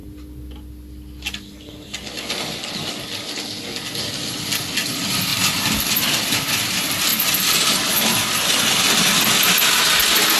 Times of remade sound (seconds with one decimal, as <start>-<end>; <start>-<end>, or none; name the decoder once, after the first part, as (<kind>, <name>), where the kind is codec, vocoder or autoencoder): 5.3-6.3 (vocoder, BigVGAN v2); 7.1-7.8